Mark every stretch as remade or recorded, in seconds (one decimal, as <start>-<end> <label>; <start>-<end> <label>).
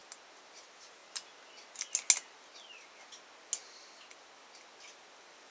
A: 0.0-5.5 recorded